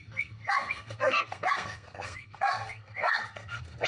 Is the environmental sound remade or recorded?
remade